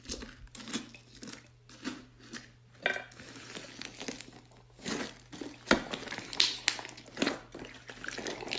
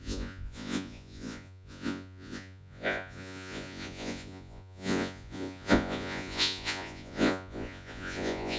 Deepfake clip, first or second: second